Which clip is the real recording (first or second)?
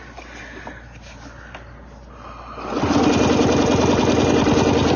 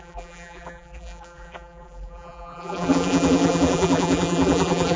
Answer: first